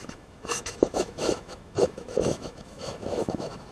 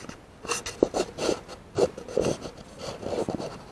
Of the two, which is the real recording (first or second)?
second